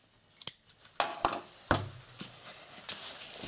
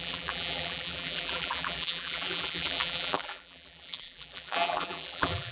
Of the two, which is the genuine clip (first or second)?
first